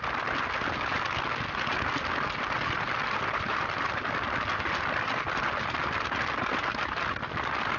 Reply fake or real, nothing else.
real